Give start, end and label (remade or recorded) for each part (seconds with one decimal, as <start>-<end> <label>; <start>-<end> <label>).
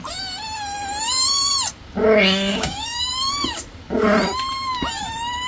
0.0-2.5 recorded; 2.5-3.1 remade; 3.1-5.5 recorded